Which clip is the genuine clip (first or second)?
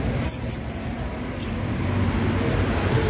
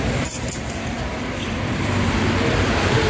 first